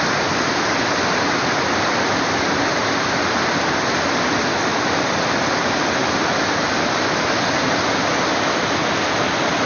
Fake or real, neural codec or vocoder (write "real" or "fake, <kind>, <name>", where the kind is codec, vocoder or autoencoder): real